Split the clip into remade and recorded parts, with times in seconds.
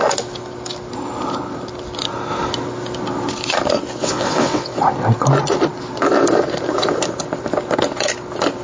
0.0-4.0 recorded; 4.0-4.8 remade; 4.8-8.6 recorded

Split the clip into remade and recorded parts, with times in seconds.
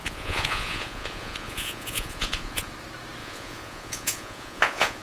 0.0-2.7 remade; 2.7-3.2 recorded; 3.2-5.0 remade